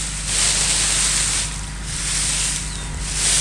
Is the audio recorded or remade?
recorded